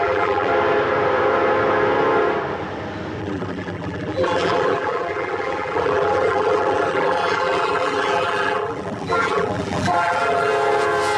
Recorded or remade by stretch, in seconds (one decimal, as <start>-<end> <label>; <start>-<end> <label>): 0.0-0.5 remade; 0.5-3.2 recorded; 3.2-10.5 remade; 10.5-11.2 recorded